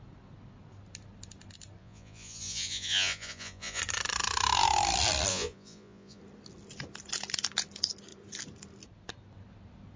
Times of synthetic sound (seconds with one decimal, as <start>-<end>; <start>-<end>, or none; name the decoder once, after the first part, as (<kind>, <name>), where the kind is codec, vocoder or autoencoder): 1.8-3.8 (vocoder, Vocos); 5.3-6.2